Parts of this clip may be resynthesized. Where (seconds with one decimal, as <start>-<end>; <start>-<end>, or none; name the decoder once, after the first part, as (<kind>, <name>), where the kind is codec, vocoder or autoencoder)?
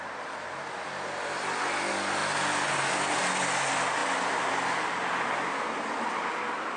none